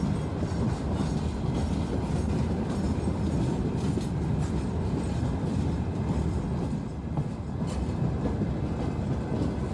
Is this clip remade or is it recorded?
recorded